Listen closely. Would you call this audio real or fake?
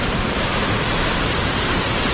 fake